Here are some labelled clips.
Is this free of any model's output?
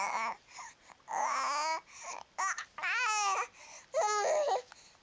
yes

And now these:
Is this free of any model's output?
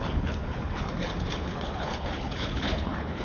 no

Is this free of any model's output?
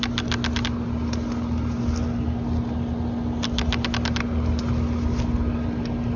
yes